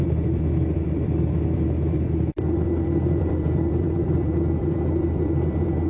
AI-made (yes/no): yes